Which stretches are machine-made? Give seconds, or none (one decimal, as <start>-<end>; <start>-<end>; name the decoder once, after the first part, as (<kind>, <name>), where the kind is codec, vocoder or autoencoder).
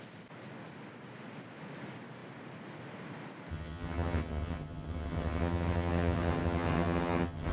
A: 3.5-7.5 (vocoder, HiFi-GAN)